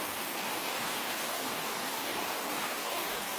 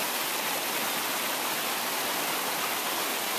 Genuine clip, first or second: second